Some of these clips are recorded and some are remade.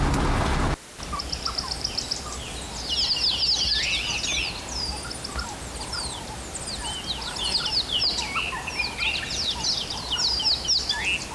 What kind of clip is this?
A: recorded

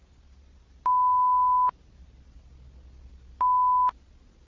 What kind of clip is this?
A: recorded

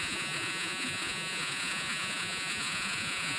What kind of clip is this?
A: remade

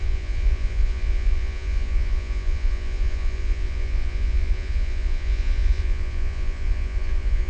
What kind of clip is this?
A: remade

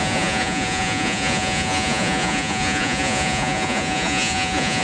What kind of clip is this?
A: remade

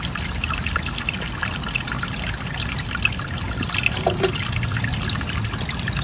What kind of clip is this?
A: recorded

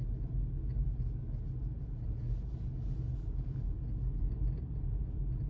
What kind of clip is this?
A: recorded